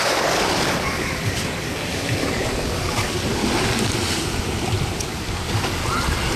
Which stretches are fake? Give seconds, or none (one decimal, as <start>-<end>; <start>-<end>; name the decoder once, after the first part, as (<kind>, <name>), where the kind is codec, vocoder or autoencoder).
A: 0.0-3.4 (codec, DAC); 5.0-5.8